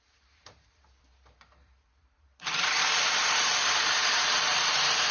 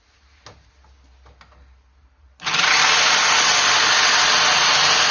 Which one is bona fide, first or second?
second